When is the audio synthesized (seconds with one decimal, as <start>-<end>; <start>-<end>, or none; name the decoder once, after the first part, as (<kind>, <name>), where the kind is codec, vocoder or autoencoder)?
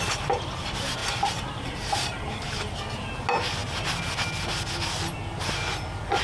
1.0-2.5 (vocoder, BigVGAN v2)